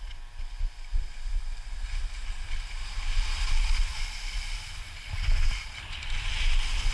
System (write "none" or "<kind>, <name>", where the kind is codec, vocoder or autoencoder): none